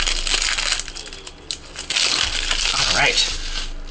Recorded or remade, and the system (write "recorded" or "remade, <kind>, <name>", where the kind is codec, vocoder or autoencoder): recorded